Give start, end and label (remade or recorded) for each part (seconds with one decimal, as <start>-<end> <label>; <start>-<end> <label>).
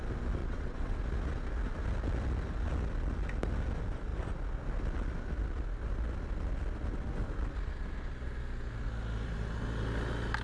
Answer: 0.0-0.4 recorded; 0.4-1.0 remade; 1.0-10.4 recorded